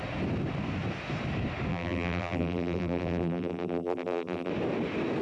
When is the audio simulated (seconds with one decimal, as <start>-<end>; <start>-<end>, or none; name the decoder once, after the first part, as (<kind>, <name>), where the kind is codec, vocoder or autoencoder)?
1.7-4.5 (vocoder, BigVGAN v2)